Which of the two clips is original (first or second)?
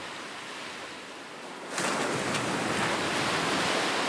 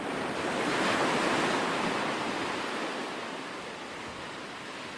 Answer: first